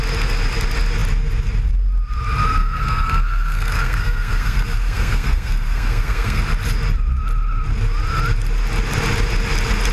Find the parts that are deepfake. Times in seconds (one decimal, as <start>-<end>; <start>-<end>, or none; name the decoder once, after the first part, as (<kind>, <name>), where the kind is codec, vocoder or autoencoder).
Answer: 2.6-6.4 (codec, SNAC)

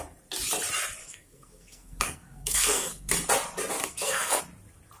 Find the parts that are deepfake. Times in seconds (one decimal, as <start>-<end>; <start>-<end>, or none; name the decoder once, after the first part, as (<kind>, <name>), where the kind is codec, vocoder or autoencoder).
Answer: 1.0-3.1 (codec, SNAC); 3.8-4.4

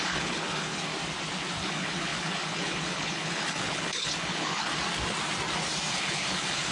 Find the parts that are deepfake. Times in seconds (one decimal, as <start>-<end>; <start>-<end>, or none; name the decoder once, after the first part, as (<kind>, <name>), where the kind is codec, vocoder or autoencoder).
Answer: 0.0-0.9 (codec, HILCodec); 1.6-4.7; 5.9-6.7

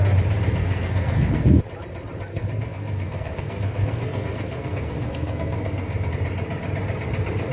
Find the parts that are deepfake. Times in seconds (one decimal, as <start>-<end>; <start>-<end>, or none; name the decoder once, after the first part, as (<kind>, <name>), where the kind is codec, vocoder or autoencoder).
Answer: 0.6-1.6 (codec, SNAC); 2.3-6.1